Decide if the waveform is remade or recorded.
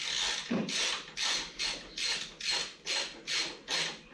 recorded